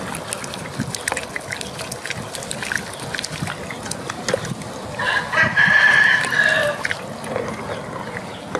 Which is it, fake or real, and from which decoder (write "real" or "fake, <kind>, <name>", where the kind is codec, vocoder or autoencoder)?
real